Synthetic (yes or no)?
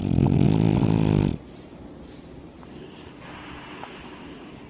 no